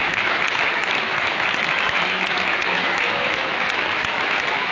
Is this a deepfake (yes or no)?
yes